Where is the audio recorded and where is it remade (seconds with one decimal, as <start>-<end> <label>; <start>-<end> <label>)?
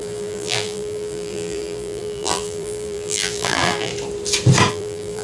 0.0-3.9 remade; 3.9-4.7 recorded; 4.7-5.2 remade